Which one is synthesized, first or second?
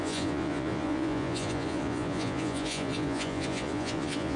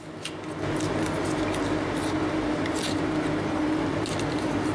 first